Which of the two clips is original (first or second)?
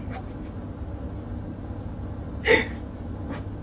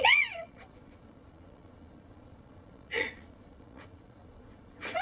first